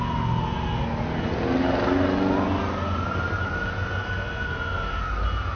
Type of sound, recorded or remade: recorded